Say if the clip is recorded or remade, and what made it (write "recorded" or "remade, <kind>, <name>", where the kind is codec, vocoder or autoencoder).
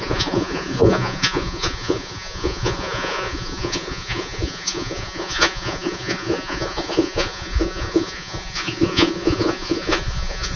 remade, vocoder, Vocos